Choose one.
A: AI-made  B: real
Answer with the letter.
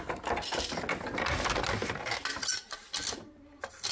B